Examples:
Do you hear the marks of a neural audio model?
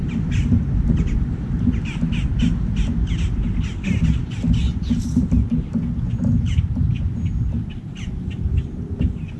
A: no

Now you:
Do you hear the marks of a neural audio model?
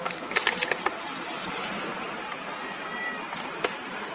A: no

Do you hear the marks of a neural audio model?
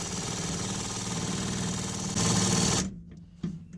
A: no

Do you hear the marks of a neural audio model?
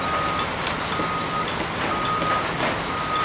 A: no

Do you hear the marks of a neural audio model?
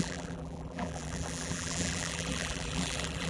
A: yes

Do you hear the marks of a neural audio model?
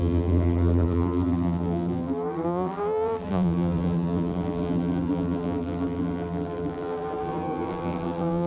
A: yes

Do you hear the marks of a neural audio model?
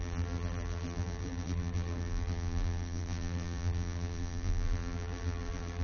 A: yes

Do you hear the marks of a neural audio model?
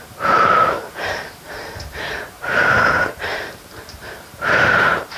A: yes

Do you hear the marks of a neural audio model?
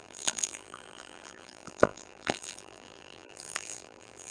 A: yes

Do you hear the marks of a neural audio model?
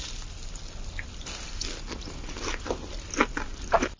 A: no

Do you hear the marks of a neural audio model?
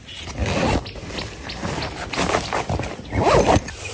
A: no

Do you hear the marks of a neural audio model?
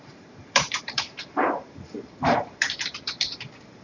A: yes